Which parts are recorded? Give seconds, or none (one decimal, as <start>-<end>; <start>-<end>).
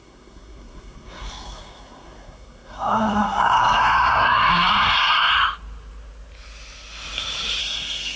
5.3-7.6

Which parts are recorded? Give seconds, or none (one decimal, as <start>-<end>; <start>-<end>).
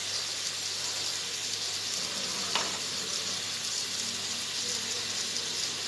0.0-5.9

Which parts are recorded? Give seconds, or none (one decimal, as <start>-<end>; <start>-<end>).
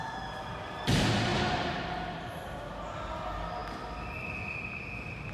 0.0-5.3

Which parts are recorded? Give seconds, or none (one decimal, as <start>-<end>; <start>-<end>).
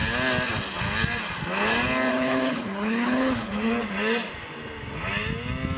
0.0-2.1; 3.7-5.8